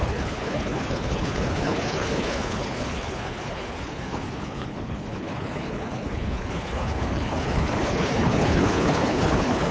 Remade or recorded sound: remade